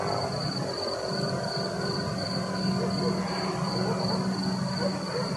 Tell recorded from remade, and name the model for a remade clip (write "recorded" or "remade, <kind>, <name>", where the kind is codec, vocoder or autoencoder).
recorded